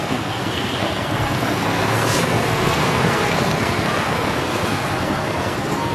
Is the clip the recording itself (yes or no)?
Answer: no